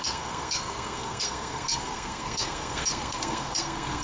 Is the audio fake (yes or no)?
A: yes